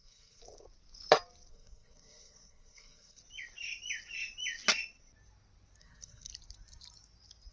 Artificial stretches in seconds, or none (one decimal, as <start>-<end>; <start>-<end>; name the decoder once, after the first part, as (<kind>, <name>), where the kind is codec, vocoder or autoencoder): 0.0-0.4 (codec, SNAC); 1.5-3.2; 5.8-6.3